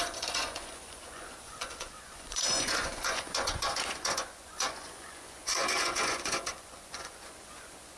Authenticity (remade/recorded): remade